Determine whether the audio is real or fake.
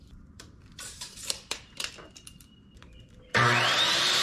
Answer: fake